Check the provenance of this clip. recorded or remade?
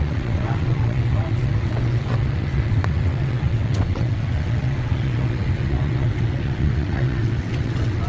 remade